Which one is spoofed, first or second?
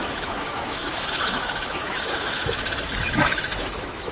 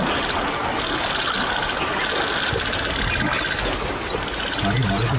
first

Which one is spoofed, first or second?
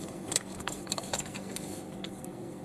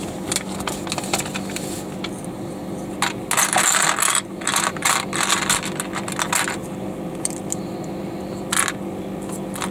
first